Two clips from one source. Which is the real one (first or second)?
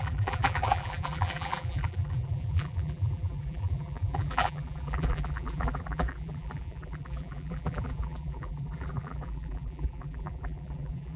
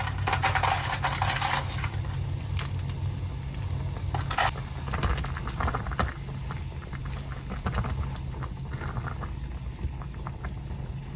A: second